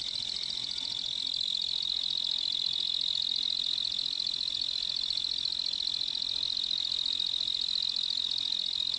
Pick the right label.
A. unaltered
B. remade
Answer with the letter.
A